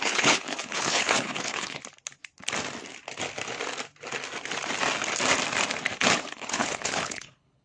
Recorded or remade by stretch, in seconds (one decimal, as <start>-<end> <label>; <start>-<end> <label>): 0.0-1.8 remade; 1.8-6.2 recorded; 6.2-7.6 remade